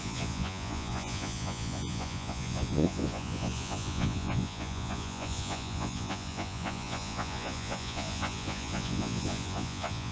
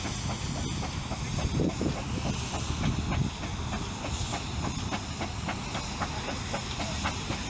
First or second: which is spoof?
first